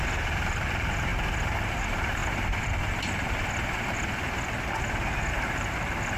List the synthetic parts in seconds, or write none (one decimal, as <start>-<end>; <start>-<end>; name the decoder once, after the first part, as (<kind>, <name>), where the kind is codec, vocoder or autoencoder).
0.0-1.1 (vocoder, BigVGAN v2); 1.8-2.2; 5.3-6.2

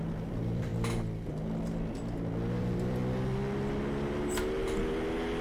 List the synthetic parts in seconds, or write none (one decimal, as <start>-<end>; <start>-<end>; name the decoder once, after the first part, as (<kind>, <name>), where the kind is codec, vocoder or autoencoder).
0.0-0.7 (vocoder, BigVGAN v2); 2.6-3.0